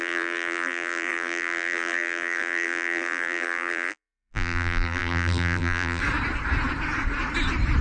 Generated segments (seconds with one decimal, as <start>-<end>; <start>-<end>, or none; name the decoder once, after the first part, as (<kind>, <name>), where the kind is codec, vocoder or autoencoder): 0.0-6.0 (vocoder, BigVGAN v2)